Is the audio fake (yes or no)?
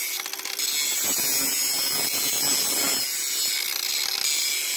no